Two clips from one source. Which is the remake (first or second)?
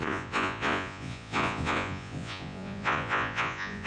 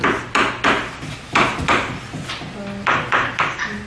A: first